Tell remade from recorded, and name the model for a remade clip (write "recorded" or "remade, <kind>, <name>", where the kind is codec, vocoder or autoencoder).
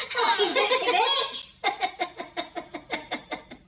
recorded